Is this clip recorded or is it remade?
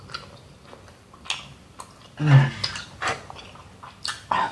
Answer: recorded